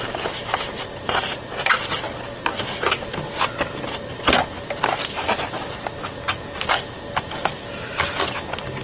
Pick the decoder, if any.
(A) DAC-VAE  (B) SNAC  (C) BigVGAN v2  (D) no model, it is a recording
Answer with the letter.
D